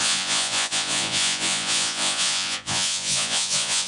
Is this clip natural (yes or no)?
no